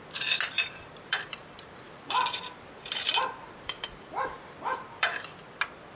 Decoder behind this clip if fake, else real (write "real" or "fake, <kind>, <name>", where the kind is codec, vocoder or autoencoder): fake, vocoder, BigVGAN v2